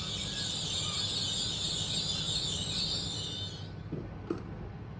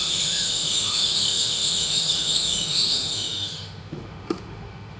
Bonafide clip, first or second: first